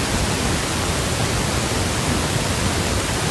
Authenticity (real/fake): real